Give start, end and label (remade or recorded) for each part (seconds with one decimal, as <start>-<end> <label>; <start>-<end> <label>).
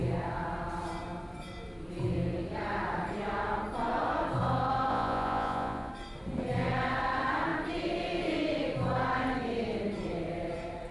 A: 0.0-4.9 recorded; 4.9-5.9 remade; 5.9-10.9 recorded